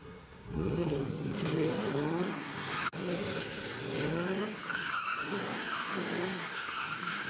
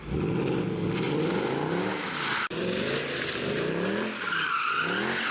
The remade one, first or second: first